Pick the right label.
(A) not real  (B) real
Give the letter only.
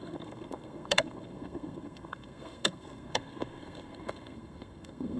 A